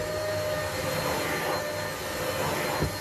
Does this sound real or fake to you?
real